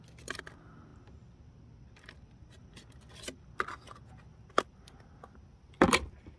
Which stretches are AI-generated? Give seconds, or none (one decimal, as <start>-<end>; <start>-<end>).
none